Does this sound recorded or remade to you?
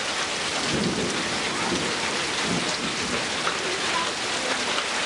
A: recorded